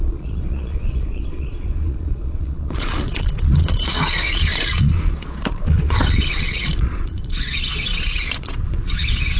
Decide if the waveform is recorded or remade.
remade